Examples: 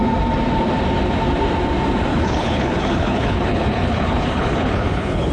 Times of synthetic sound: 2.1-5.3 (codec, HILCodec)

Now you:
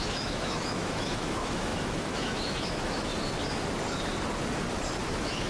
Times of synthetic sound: 0.0-3.1 (autoencoder, DAC-VAE); 5.0-5.5

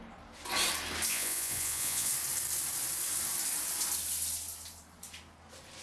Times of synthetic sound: 1.1-2.1 (vocoder, Vocos)

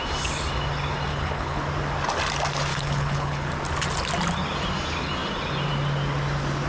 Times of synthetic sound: 1.1-1.6 (codec, HILCodec); 2.7-3.5